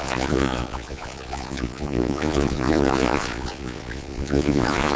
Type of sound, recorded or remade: remade